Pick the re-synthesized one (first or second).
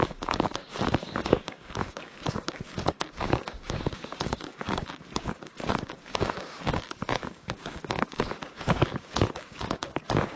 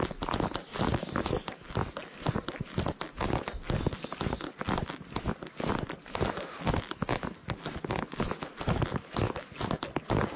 first